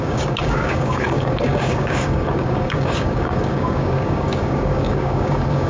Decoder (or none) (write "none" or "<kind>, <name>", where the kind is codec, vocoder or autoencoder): codec, DAC